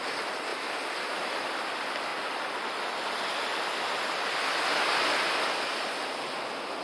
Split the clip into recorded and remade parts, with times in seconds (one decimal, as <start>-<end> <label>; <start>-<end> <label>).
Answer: 0.0-6.8 recorded